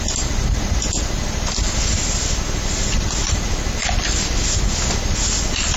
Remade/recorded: recorded